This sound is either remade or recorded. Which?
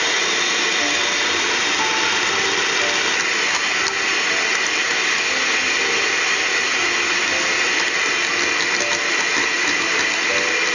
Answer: recorded